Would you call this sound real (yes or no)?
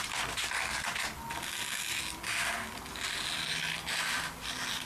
yes